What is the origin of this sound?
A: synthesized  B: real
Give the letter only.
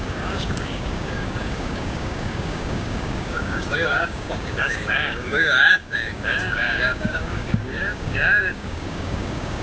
A